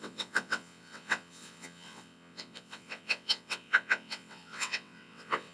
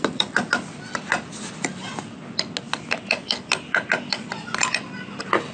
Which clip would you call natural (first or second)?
second